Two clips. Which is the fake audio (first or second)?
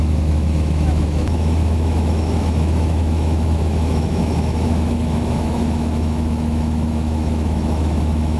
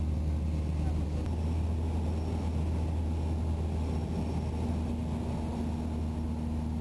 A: first